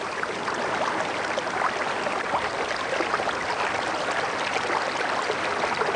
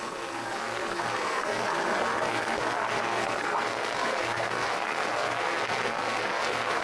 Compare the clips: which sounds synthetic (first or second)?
second